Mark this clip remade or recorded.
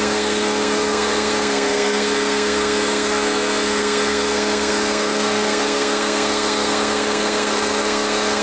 remade